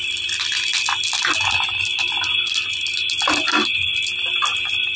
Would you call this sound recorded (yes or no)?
yes